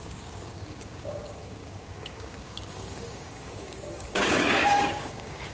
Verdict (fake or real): fake